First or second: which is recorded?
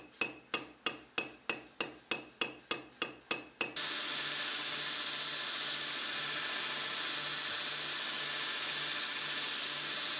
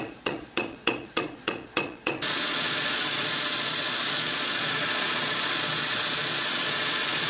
first